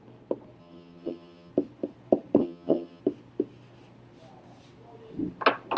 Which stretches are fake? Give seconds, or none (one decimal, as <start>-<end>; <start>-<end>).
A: 0.6-1.5; 2.4-3.0